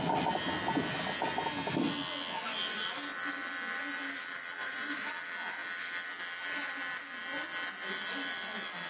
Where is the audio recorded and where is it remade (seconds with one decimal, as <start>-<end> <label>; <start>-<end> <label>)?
0.0-4.6 recorded; 4.6-5.1 remade; 5.1-8.9 recorded